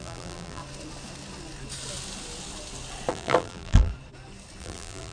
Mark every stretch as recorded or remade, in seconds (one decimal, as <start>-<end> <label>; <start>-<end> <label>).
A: 0.0-0.6 remade; 0.6-3.1 recorded; 3.1-3.9 remade; 3.9-4.6 recorded; 4.6-5.1 remade